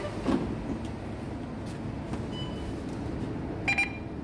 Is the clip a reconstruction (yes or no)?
no